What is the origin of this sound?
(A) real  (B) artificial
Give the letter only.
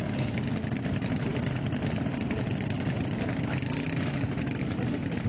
A